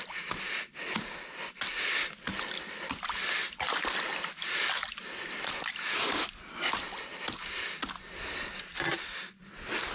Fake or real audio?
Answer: real